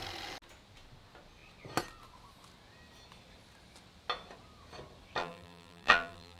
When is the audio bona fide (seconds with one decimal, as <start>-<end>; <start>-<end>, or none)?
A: 0.0-5.2